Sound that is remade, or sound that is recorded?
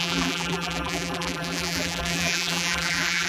remade